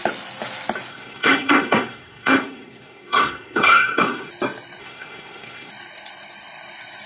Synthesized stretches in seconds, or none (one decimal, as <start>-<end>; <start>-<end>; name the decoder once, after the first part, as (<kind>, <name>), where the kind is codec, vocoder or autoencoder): 0.9-4.3 (codec, SNAC); 4.8-5.7